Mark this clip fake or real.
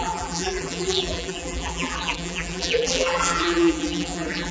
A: fake